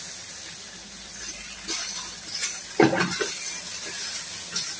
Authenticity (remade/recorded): recorded